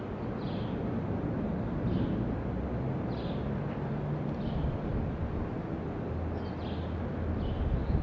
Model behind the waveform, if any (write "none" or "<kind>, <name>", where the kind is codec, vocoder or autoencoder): none